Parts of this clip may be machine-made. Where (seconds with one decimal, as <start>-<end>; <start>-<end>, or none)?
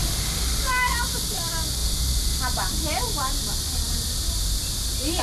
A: 0.0-0.5